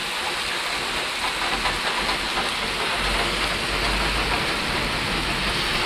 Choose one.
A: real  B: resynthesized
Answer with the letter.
A